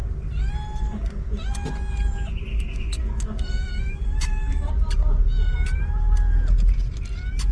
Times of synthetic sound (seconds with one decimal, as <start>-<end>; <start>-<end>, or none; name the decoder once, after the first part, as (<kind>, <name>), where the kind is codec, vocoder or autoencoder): 2.5-4.7 (autoencoder, DAC-VAE)